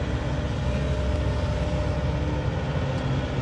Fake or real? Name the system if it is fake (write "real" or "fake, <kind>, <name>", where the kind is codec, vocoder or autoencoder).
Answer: real